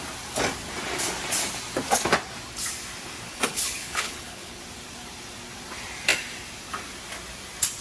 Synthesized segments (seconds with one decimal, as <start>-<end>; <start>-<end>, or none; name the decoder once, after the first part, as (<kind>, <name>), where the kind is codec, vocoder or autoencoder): 3.3-4.6 (codec, HILCodec)